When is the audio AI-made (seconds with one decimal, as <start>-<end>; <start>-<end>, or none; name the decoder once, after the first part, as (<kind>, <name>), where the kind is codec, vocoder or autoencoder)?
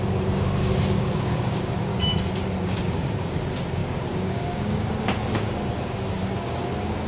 0.0-1.9 (codec, DAC); 2.6-7.1